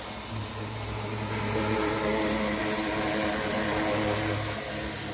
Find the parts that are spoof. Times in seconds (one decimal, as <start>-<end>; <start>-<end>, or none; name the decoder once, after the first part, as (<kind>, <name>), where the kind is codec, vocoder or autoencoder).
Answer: none